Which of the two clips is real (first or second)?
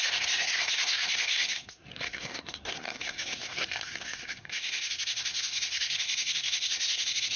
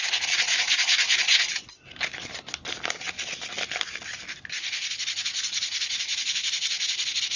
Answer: second